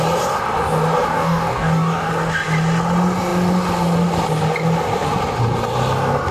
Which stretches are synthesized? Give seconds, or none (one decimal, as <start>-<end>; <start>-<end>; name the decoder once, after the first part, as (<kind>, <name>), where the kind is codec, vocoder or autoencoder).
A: 1.1-2.1 (codec, DAC)